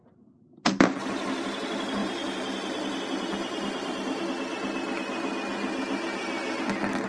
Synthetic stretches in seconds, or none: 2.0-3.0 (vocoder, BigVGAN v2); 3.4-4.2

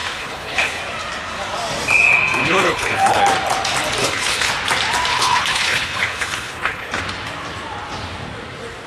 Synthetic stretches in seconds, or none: 0.0-0.8 (codec, HILCodec); 2.4-3.2; 4.0-4.5; 5.1-7.0

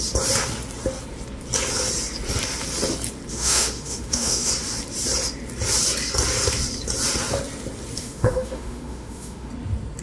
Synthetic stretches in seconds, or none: 3.3-4.5 (autoencoder, DAC-VAE); 8.0-9.5

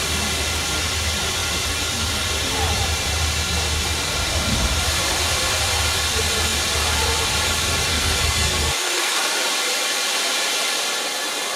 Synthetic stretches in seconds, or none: 7.9-9.2 (codec, SNAC)

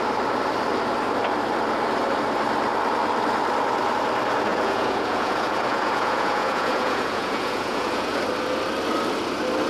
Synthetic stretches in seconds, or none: 4.5-8.2 (vocoder, Vocos)